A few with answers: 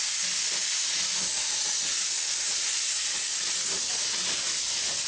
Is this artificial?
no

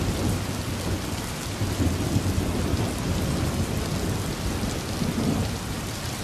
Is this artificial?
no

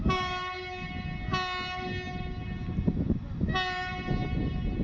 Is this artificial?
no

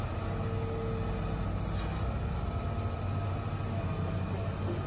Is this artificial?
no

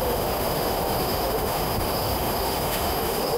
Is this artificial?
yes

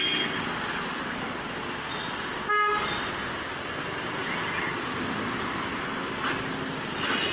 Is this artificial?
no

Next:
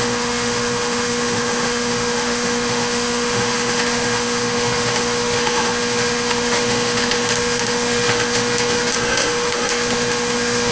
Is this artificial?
yes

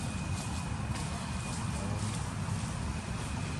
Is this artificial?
no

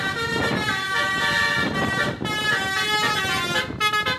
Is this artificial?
no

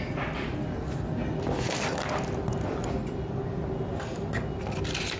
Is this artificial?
no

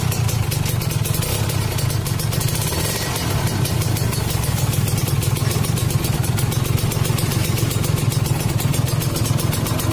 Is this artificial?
no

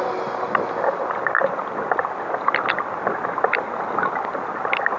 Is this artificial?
no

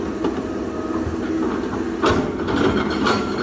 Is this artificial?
no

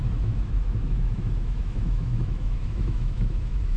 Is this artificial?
yes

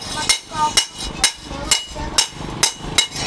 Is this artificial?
no